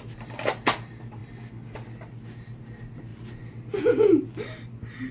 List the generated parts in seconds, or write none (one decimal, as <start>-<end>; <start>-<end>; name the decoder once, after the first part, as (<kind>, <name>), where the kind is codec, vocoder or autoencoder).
none